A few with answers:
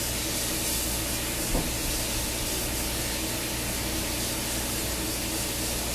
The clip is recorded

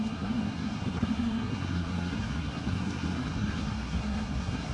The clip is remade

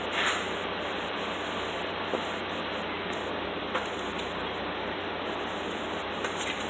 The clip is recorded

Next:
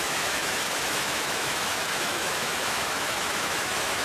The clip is remade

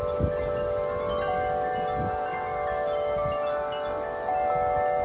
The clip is recorded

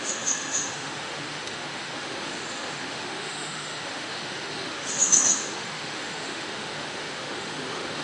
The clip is remade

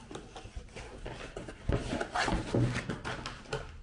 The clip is recorded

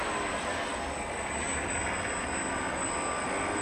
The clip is recorded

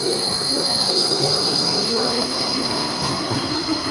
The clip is remade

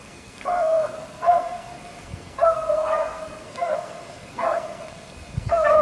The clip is remade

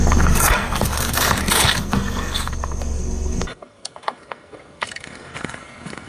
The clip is remade